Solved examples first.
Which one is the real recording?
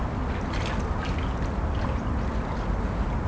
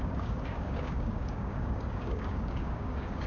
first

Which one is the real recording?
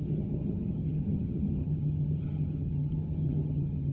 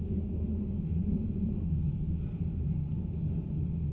second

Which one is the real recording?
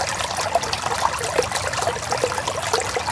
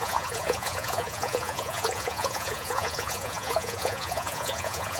first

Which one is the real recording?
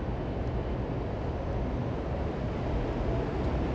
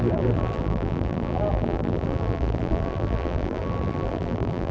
first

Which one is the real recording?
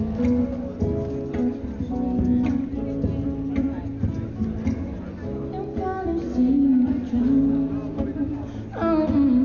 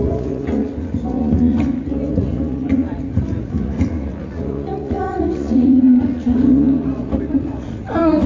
first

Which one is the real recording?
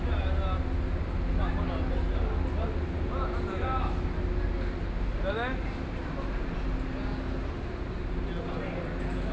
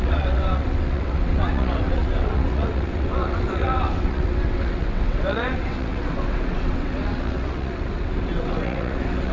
first